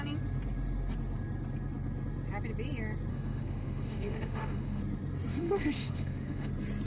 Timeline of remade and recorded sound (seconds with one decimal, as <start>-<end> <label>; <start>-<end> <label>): 0.0-3.1 recorded; 3.1-4.8 remade; 4.8-5.3 recorded; 5.3-6.5 remade; 6.5-6.9 recorded